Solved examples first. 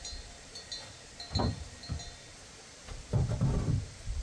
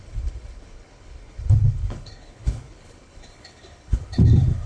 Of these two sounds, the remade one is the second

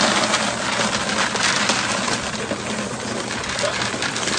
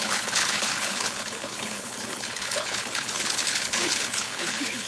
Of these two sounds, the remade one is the second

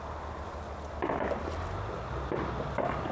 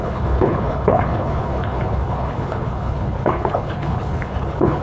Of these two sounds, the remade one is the second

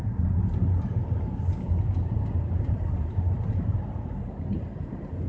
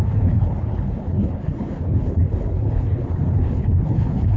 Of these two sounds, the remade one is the second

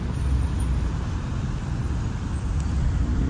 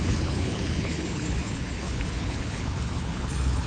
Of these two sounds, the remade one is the second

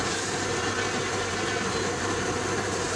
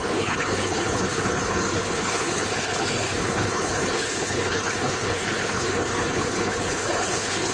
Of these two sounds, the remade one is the second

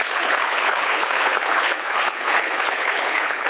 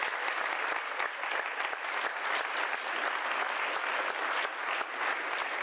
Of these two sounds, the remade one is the first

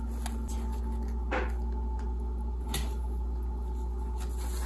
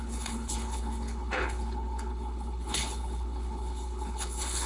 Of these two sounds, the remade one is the second